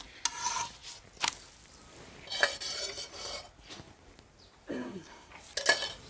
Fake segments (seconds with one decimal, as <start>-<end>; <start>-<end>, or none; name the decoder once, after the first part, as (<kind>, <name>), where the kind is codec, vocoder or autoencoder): 4.7-5.3 (codec, SNAC)